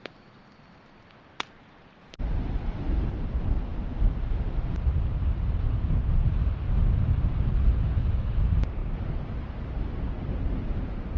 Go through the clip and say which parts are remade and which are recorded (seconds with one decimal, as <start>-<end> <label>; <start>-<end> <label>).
0.0-11.2 recorded